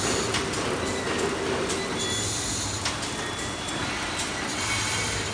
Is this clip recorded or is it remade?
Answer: recorded